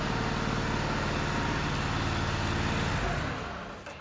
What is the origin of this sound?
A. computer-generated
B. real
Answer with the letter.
B